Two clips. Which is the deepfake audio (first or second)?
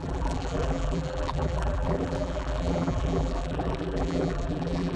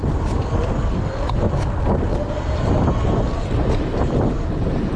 first